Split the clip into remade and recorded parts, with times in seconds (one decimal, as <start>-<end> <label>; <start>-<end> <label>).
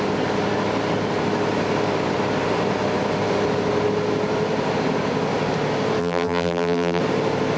0.0-6.0 recorded; 6.0-7.0 remade; 7.0-7.6 recorded